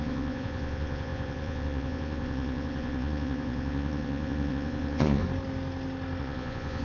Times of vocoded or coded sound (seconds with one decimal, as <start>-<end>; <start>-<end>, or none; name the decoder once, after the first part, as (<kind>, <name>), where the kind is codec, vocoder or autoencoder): 0.0-5.2 (vocoder, Vocos); 6.2-6.8